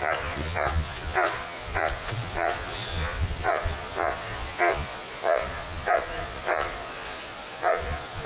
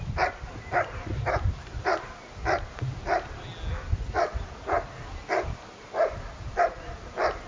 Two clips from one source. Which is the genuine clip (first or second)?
second